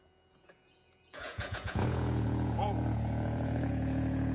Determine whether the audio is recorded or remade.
remade